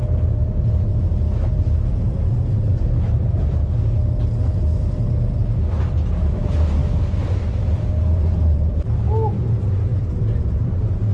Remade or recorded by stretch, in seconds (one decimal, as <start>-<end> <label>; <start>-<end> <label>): 0.0-0.9 remade; 0.9-1.5 recorded; 1.5-3.6 remade; 3.6-6.2 recorded; 6.2-11.1 remade